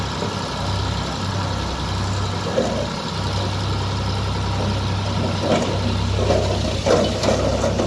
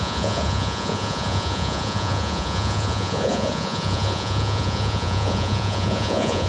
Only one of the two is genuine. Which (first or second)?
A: first